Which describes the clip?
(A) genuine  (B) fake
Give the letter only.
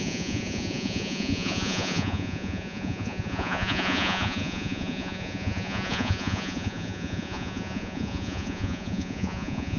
B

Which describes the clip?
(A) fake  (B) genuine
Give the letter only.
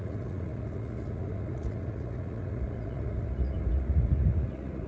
A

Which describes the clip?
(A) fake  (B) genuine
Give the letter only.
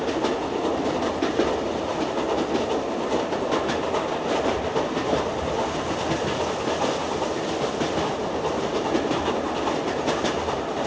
B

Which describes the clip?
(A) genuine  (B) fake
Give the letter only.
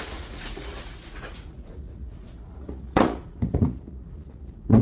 B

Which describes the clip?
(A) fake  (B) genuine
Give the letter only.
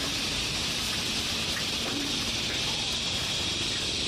B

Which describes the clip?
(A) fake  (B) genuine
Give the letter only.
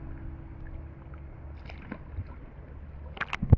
B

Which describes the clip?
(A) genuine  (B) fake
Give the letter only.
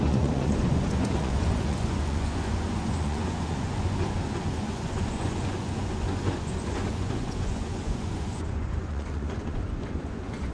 B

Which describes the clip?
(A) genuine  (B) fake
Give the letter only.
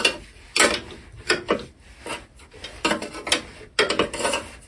A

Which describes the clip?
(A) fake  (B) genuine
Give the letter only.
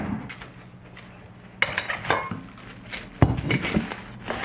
B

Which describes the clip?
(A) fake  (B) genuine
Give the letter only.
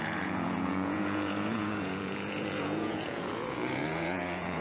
A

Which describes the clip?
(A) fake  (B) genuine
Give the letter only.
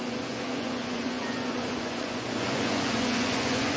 A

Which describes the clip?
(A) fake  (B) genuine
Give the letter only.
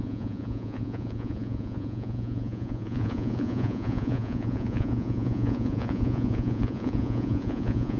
A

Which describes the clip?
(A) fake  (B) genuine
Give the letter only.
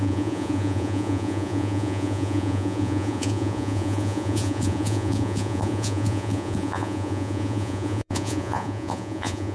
A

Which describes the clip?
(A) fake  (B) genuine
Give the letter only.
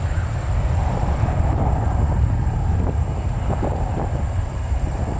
B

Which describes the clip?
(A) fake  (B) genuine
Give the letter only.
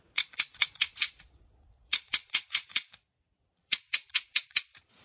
A